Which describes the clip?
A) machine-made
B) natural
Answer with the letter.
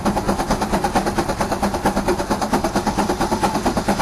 A